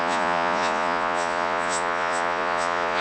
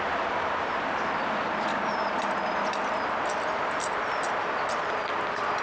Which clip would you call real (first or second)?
second